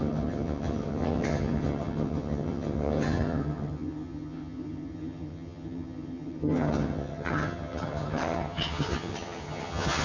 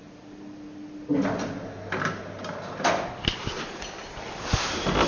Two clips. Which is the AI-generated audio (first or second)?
first